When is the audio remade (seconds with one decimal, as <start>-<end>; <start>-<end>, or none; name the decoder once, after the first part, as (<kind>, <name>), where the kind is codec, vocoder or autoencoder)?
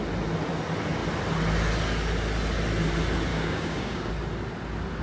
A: 3.3-4.1 (codec, DAC)